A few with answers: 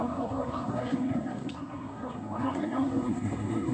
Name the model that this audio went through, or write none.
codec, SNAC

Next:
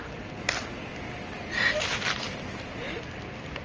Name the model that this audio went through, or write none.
none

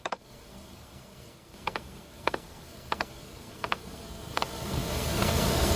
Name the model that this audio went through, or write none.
codec, SNAC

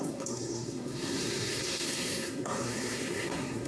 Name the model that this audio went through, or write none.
codec, SNAC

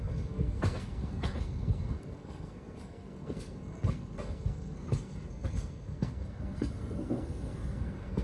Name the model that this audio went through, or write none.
codec, SNAC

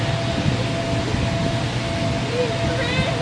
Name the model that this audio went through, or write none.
none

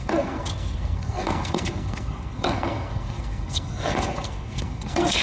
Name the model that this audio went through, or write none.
codec, SNAC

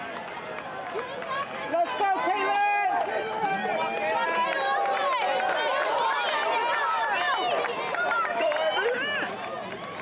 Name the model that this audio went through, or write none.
none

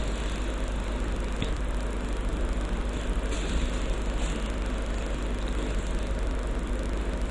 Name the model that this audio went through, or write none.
none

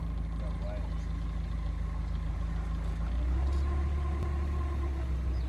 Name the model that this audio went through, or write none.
none